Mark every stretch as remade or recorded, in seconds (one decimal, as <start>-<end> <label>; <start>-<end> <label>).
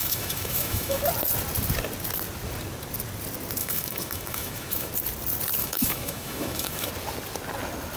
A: 0.0-1.0 remade; 1.0-3.6 recorded; 3.6-4.9 remade; 4.9-5.6 recorded; 5.6-6.9 remade; 6.9-8.0 recorded